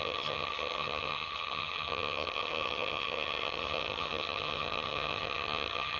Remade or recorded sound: remade